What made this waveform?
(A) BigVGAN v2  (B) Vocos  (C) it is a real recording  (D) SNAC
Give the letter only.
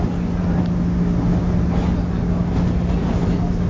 C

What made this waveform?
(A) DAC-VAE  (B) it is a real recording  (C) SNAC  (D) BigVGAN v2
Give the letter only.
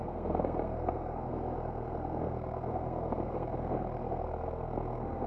C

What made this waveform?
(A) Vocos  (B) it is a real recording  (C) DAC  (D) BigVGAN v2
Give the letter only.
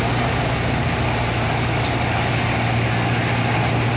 B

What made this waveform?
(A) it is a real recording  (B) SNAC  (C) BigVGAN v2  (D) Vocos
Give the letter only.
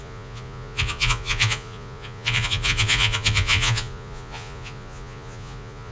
D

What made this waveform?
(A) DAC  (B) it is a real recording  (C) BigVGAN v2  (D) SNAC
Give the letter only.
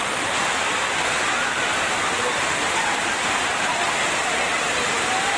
B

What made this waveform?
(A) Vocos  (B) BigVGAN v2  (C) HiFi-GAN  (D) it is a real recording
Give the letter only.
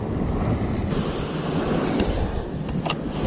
D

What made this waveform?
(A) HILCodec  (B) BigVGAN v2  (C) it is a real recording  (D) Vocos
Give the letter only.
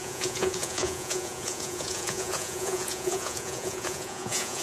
D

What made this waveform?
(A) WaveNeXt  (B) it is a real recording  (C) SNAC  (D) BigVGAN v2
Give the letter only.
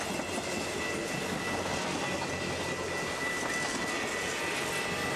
B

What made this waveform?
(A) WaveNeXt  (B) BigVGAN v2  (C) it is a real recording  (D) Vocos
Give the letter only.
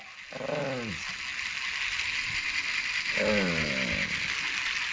C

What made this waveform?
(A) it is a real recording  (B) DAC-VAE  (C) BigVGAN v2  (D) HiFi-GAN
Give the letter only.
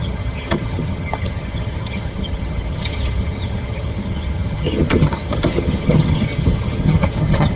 D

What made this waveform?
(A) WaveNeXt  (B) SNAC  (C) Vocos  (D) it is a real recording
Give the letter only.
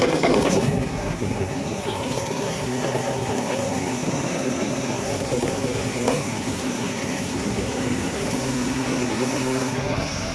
B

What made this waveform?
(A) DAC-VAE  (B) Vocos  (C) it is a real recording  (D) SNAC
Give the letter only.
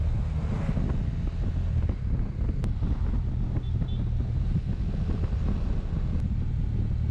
C